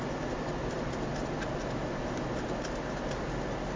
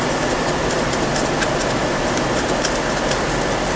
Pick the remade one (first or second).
second